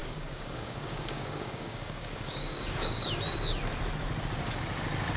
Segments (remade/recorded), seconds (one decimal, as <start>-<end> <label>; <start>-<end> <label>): 0.0-3.1 remade; 3.1-5.2 recorded